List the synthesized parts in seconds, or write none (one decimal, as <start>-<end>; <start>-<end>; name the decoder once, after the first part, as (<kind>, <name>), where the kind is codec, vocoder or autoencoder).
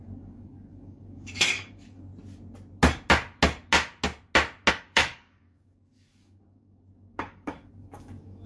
0.0-2.1 (codec, DAC); 4.7-8.5